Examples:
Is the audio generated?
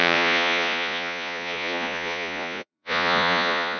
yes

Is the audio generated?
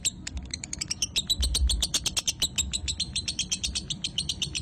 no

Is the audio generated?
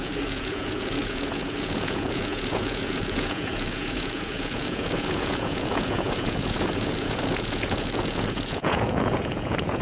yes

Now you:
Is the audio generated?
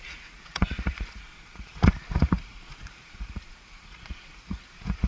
yes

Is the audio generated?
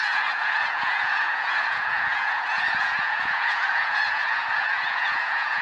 yes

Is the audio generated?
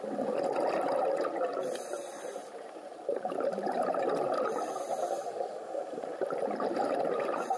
no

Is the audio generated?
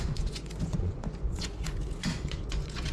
yes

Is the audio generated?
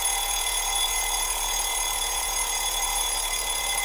yes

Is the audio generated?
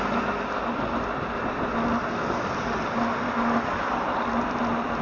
no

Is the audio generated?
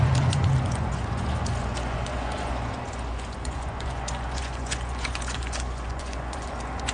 yes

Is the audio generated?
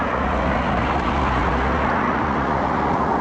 yes